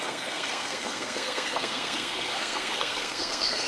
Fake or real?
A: fake